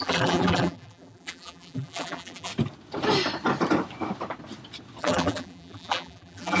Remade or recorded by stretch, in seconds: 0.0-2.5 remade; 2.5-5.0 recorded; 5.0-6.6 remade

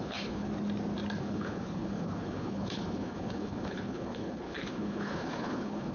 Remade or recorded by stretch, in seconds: 0.0-0.5 remade; 0.5-1.2 recorded; 1.2-5.9 remade